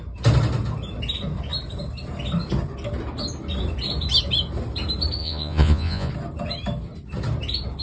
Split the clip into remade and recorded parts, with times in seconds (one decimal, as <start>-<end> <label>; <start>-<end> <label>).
0.0-5.2 recorded; 5.2-6.1 remade; 6.1-7.8 recorded